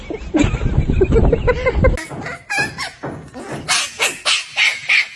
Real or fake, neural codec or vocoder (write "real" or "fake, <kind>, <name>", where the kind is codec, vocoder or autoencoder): real